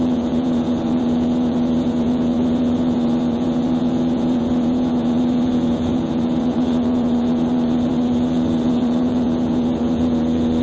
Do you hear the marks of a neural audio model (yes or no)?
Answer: yes